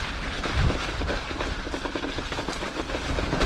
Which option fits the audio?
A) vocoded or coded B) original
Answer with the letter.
B